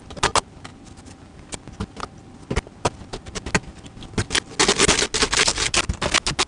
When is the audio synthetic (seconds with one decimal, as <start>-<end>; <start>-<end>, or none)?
none